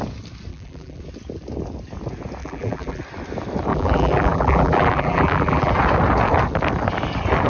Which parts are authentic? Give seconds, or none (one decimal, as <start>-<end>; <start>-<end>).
0.0-0.5; 1.0-2.4; 3.0-3.7; 5.7-7.5